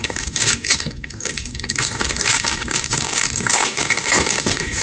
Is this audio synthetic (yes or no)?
yes